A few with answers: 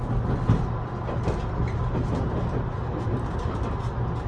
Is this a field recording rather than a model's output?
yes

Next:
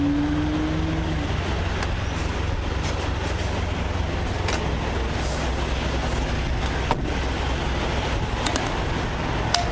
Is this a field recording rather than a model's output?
yes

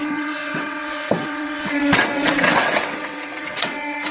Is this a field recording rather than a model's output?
no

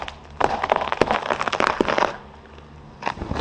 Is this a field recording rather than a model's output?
yes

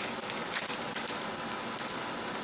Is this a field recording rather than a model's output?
yes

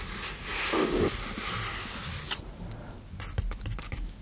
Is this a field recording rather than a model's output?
yes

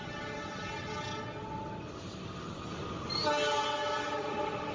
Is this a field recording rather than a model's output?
yes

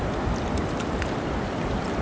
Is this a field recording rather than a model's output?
yes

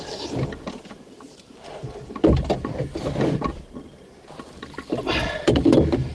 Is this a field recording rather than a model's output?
yes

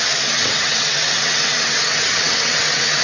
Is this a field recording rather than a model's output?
no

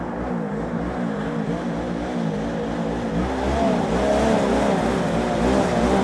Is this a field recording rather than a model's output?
yes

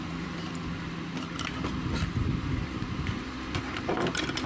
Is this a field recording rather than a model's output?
yes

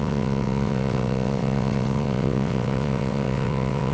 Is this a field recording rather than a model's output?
no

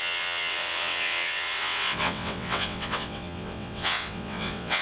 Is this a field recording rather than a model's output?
no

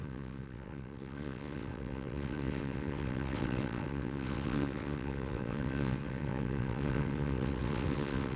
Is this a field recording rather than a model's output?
no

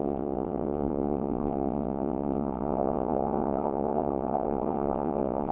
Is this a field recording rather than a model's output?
no